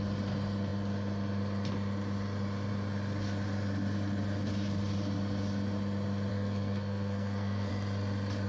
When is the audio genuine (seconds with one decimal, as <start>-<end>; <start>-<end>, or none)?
0.0-6.3; 7.7-8.5